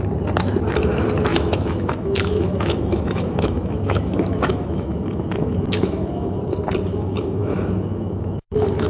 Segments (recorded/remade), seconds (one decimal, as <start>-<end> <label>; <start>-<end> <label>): 0.0-1.3 recorded; 1.3-6.4 remade; 6.4-6.9 recorded; 6.9-8.9 remade